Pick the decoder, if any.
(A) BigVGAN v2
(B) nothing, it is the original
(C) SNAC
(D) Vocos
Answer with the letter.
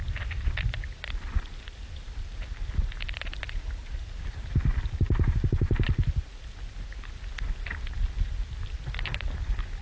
B